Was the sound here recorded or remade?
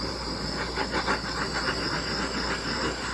remade